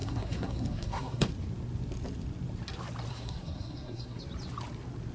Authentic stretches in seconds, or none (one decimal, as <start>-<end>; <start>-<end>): 1.3-3.1; 4.2-5.1